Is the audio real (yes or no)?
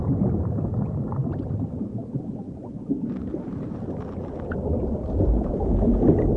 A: yes